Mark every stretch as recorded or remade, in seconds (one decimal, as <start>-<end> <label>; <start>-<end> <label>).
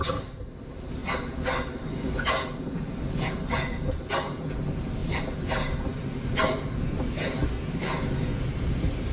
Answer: 0.0-9.1 recorded